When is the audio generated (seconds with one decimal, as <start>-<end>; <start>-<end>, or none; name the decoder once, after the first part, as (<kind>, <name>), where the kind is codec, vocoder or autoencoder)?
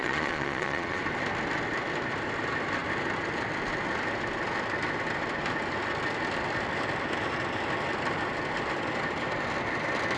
0.0-1.0 (vocoder, Vocos)